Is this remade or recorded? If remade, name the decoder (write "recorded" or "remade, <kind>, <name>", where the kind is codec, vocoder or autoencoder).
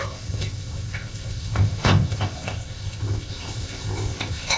remade, codec, ZipCodec